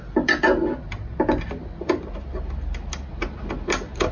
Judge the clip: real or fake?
real